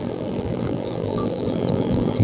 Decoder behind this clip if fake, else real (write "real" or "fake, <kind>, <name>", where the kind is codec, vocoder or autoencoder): fake, vocoder, BigVGAN v2